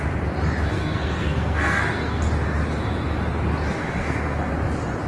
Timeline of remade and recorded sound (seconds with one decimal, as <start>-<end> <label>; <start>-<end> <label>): 0.0-0.7 recorded; 0.7-2.2 remade; 2.2-3.8 recorded; 3.8-4.5 remade; 4.5-5.1 recorded